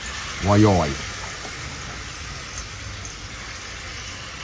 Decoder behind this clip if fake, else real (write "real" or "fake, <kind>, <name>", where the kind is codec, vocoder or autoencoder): real